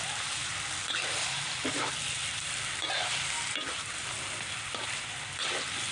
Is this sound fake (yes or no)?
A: no